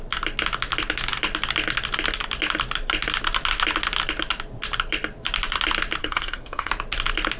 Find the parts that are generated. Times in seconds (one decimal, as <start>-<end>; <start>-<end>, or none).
6.0-6.7